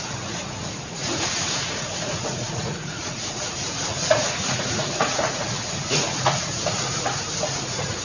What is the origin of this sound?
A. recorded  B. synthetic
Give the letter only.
B